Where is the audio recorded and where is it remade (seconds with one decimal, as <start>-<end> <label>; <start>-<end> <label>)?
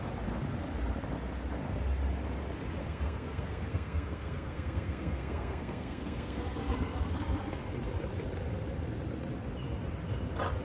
0.0-2.8 recorded; 2.8-7.7 remade; 7.7-10.6 recorded